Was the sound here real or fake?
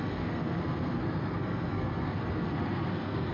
fake